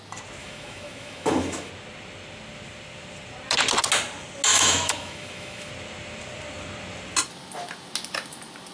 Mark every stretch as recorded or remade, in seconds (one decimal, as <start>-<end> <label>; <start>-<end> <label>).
0.0-0.4 recorded; 0.4-1.7 remade; 1.7-4.5 recorded; 4.5-5.7 remade; 5.7-8.7 recorded